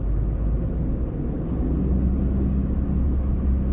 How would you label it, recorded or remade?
recorded